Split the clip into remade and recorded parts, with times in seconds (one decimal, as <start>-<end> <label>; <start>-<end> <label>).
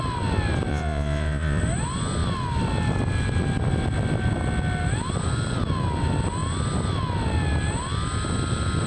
0.0-0.7 recorded; 0.7-1.6 remade; 1.6-8.9 recorded